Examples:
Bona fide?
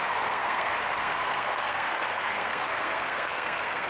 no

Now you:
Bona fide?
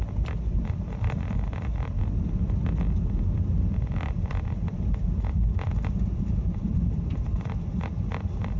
yes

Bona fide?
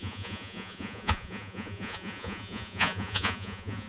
no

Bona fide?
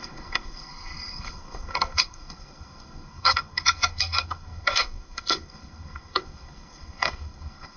no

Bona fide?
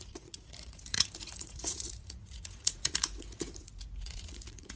no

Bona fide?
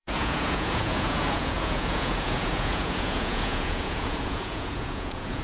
no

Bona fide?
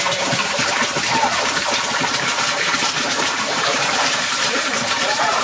no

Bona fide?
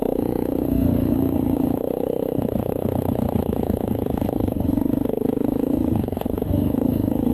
no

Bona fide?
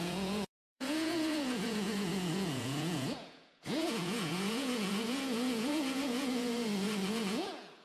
no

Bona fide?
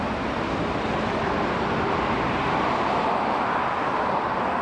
yes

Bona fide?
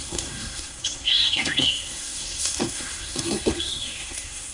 no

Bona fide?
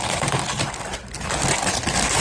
yes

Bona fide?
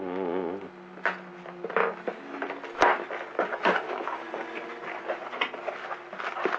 yes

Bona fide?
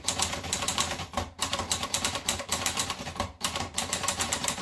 no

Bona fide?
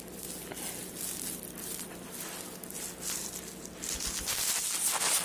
yes